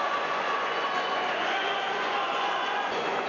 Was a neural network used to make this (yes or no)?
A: yes